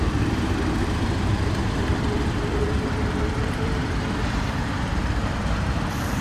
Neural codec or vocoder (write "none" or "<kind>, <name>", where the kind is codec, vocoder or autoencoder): vocoder, BigVGAN v2